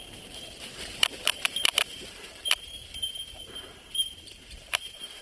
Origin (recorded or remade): remade